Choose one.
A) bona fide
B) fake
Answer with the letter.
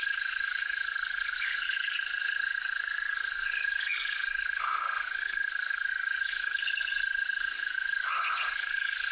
B